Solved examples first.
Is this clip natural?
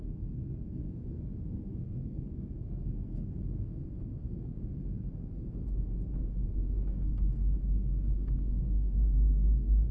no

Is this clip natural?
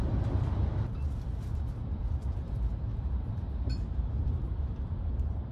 no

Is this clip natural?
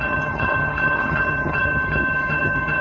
no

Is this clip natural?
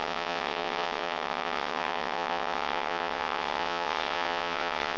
no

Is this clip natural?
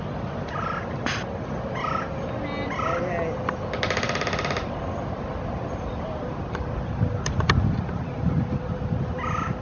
yes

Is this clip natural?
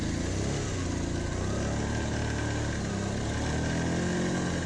yes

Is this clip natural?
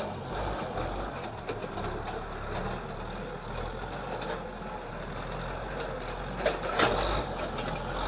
yes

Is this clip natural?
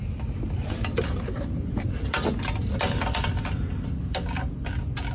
yes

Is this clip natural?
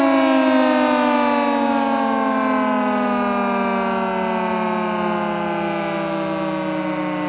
yes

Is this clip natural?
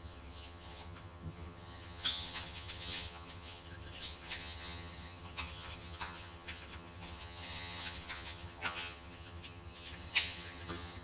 no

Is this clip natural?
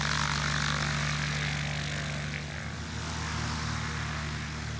yes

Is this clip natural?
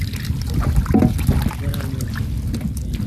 yes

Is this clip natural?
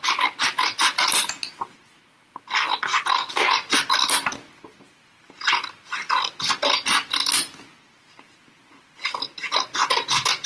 yes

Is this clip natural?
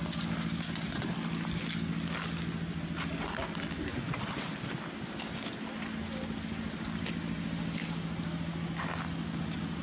yes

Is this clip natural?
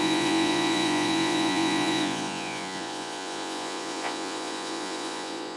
no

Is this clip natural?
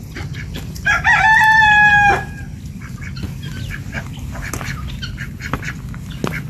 yes